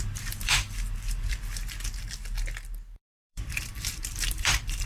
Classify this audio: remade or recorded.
remade